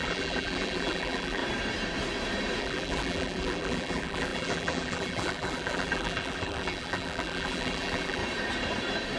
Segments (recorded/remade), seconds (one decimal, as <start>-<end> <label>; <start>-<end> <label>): 0.0-1.4 remade; 1.4-2.6 recorded; 2.6-8.2 remade; 8.2-9.2 recorded